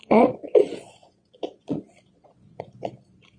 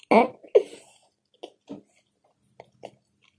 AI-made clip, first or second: first